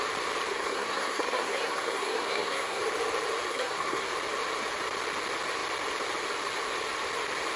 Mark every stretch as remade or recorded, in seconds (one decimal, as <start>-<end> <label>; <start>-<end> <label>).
0.0-0.5 recorded; 0.5-2.8 remade; 2.8-3.5 recorded; 3.5-4.1 remade; 4.1-7.6 recorded